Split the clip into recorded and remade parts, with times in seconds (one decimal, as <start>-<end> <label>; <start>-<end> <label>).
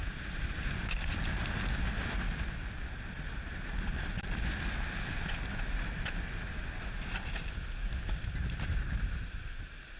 0.0-10.0 recorded